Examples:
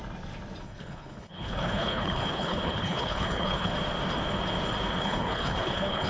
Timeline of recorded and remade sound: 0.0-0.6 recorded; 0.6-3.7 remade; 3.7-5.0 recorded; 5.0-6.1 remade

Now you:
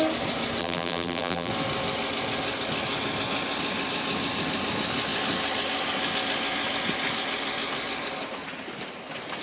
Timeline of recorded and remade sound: 0.0-0.6 recorded; 0.6-1.5 remade; 1.5-9.4 recorded

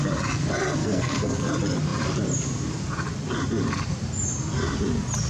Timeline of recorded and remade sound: 0.0-0.8 recorded; 0.8-1.5 remade; 1.5-5.3 recorded

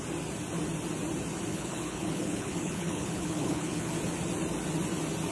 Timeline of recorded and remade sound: 0.0-1.5 recorded; 1.5-3.9 remade; 3.9-5.3 recorded

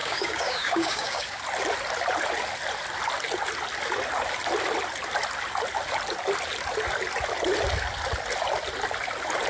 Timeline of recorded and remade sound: 0.0-1.4 remade; 1.4-9.5 recorded

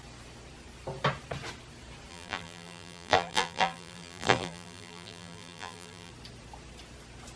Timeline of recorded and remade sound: 0.0-2.1 recorded; 2.1-6.1 remade; 6.1-7.4 recorded